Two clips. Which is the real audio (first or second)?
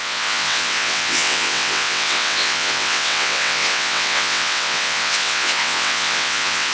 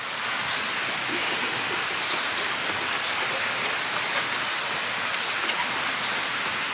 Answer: second